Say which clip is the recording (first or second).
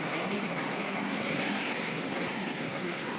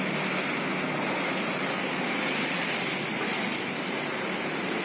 second